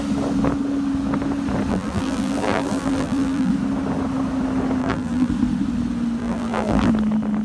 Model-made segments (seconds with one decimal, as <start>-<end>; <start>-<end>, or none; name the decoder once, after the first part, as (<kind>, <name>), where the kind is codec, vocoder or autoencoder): 1.7-3.5 (vocoder, BigVGAN v2); 4.8-5.3; 6.2-6.9

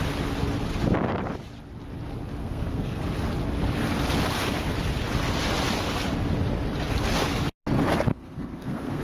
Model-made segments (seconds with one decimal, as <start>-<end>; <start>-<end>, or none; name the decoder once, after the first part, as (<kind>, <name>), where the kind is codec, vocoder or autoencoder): 2.4-3.0 (codec, SNAC); 8.1-9.0

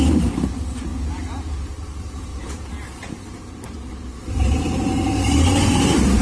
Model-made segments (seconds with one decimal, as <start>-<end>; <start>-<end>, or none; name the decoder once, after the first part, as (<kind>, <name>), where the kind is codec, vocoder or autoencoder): 0.0-0.9 (vocoder, BigVGAN v2); 1.5-6.2

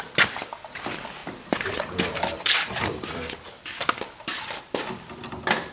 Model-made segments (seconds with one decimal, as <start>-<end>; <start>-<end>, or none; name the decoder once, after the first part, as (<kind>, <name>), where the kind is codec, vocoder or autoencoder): 1.2-4.6 (vocoder, BigVGAN v2)

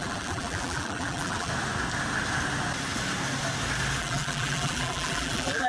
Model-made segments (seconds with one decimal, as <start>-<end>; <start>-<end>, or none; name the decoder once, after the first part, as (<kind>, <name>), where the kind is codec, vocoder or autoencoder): 0.0-1.5 (vocoder, BigVGAN v2); 4.0-5.7

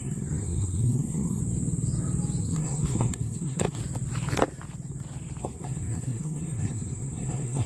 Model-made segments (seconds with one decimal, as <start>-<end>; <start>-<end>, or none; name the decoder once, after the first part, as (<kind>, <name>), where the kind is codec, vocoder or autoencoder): 0.0-1.4 (codec, SNAC); 2.4-3.8; 5.4-7.7

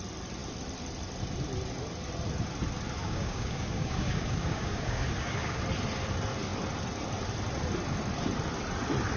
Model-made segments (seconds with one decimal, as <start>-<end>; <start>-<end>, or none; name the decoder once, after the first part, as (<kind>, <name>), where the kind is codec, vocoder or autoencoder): 3.0-5.6 (codec, DAC)